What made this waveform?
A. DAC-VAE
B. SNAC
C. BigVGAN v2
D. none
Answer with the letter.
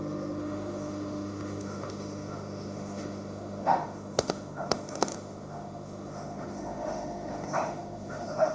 A